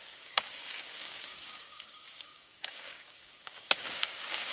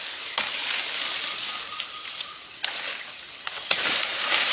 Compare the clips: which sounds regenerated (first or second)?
first